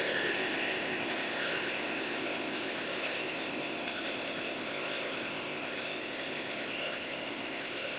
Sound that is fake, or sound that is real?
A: fake